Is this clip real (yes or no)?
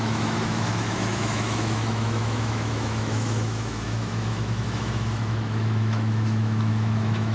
no